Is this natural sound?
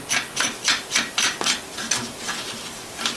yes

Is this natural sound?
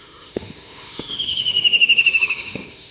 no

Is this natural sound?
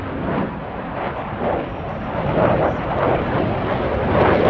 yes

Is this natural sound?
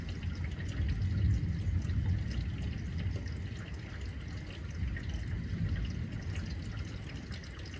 yes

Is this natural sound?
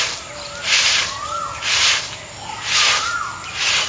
yes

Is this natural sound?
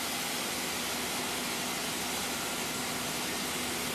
yes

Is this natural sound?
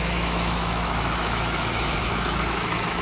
no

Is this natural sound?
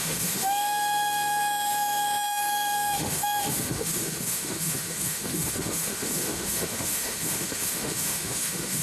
no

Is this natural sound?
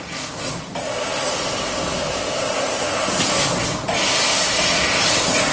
yes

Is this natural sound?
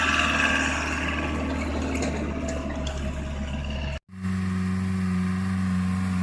yes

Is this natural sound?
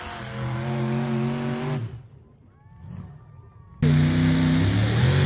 yes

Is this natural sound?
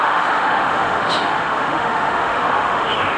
no